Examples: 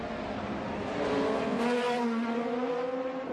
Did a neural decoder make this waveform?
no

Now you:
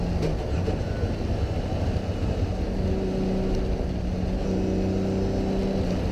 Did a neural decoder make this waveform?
no